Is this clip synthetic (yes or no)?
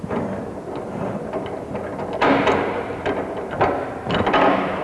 no